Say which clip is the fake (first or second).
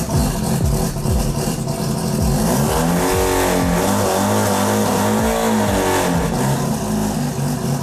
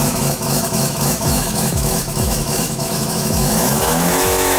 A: second